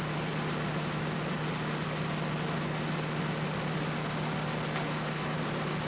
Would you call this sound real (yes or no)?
yes